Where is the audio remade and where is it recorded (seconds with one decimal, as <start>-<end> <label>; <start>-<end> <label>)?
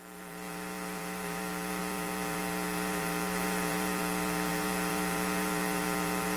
0.0-6.4 remade